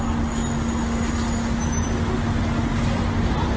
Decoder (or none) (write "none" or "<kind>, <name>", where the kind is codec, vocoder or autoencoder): none